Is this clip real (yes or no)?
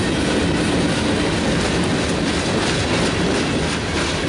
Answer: yes